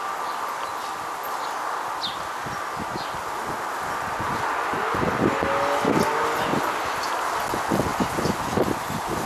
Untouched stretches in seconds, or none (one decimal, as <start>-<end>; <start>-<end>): 0.0-7.9